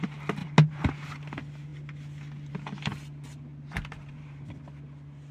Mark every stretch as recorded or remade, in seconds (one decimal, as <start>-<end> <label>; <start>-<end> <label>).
0.0-3.5 recorded; 3.5-4.4 remade; 4.4-5.3 recorded